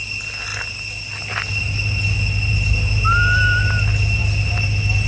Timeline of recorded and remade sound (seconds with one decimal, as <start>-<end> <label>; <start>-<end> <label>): 0.0-5.1 recorded